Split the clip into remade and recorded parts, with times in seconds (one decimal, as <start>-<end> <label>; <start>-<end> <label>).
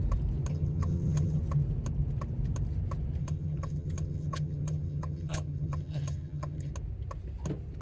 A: 0.0-0.5 recorded; 0.5-1.4 remade; 1.4-3.2 recorded; 3.2-6.7 remade; 6.7-7.8 recorded